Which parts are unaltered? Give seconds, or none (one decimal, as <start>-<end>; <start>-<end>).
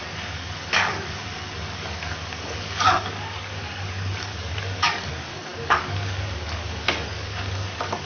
none